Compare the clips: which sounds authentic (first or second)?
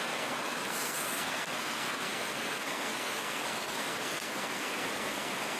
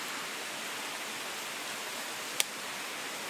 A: second